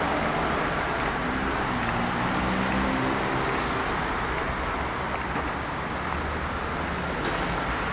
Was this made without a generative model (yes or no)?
yes